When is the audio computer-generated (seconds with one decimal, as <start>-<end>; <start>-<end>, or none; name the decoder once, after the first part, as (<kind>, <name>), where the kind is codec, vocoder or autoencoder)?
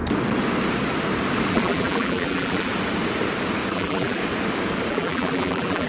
1.5-2.7 (vocoder, BigVGAN v2); 3.7-4.2; 4.9-5.9